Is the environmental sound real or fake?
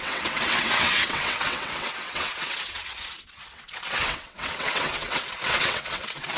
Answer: fake